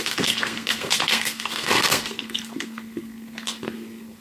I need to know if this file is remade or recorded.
remade